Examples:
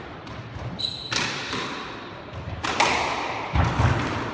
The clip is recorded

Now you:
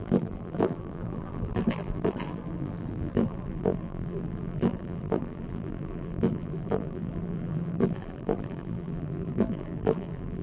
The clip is remade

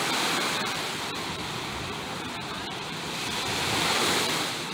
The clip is remade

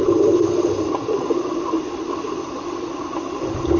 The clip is recorded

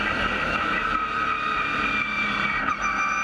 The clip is remade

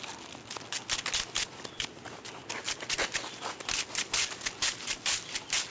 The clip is recorded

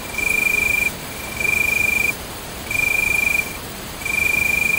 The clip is remade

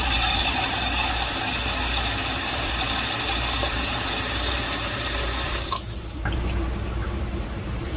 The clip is remade